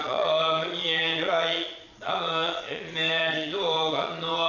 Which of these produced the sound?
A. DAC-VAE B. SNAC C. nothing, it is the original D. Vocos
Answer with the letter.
D